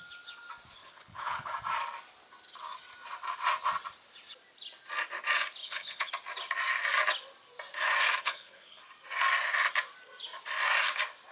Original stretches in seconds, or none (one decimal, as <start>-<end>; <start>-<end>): 0.0-0.8; 1.5-5.6; 6.1-8.2; 8.8-11.3